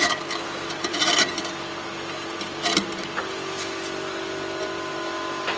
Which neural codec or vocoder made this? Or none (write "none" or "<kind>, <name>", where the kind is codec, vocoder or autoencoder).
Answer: none